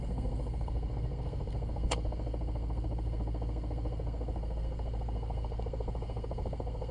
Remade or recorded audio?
remade